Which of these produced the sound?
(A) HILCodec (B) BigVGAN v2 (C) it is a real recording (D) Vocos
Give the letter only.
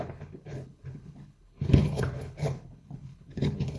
A